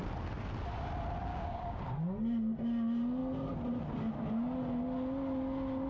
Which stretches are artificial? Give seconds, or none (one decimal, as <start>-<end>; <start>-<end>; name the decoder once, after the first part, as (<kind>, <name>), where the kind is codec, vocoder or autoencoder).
1.3-1.9 (codec, DAC)